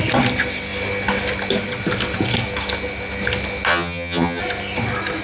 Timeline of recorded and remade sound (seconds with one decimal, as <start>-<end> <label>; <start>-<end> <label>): 0.0-3.7 recorded; 3.7-4.4 remade; 4.4-5.2 recorded

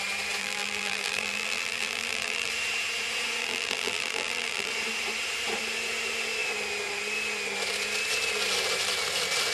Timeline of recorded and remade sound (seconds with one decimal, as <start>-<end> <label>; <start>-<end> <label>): 0.0-0.4 recorded; 0.4-2.5 remade; 2.5-3.4 recorded; 3.4-4.7 remade; 4.7-9.5 recorded

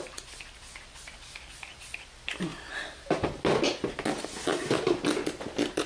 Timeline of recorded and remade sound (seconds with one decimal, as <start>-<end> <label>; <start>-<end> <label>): 0.0-5.9 recorded

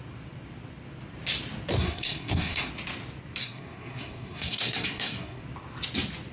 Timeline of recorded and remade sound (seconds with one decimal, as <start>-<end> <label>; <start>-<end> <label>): 0.0-1.7 recorded; 1.7-2.7 remade; 2.7-3.4 recorded; 3.4-5.4 remade; 5.4-6.3 recorded